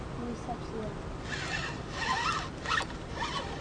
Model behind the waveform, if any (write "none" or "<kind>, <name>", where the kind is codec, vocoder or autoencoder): none